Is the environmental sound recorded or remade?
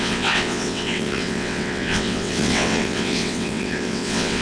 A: remade